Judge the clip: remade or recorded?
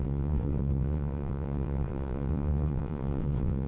remade